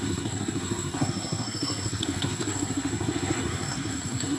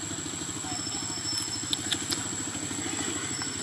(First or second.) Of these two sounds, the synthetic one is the first